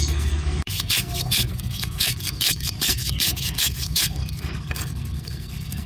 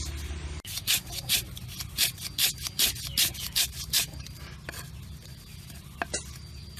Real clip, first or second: second